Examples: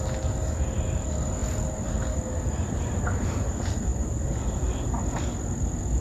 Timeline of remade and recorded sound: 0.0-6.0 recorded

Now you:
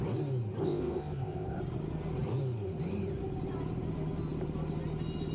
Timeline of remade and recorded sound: 0.0-0.6 recorded; 0.6-1.6 remade; 1.6-5.3 recorded

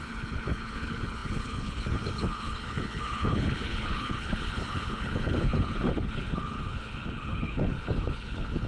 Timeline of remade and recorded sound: 0.0-8.7 remade

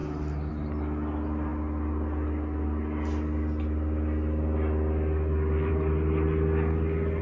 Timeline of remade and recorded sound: 0.0-7.2 recorded

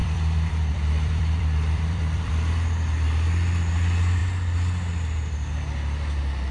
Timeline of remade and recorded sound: 0.0-2.3 remade; 2.3-6.5 recorded

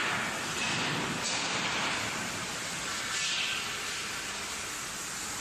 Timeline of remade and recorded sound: 0.0-5.4 recorded

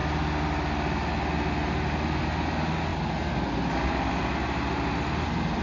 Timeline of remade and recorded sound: 0.0-5.6 recorded